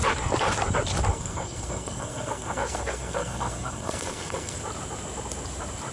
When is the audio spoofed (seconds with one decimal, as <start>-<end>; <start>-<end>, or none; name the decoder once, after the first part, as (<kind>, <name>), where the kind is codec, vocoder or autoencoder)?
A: 1.1-4.6 (codec, SNAC)